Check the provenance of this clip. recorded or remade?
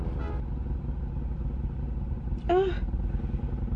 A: recorded